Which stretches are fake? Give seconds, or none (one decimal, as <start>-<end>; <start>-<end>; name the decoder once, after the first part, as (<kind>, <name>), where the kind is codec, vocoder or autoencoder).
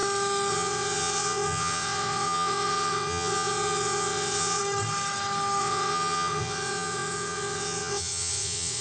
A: 0.5-4.6 (vocoder, WaveNeXt); 5.6-8.8